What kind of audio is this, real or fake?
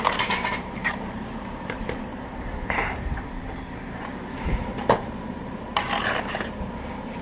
fake